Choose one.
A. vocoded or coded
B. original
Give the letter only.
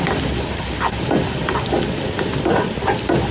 B